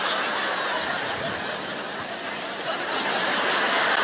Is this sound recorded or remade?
recorded